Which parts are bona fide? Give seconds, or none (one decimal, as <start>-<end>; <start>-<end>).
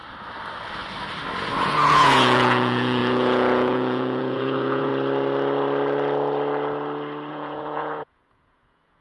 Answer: 0.0-1.6; 4.9-7.3